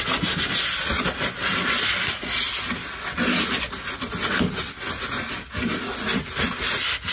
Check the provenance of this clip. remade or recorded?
recorded